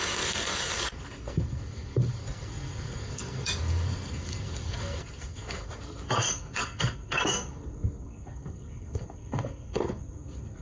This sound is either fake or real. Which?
fake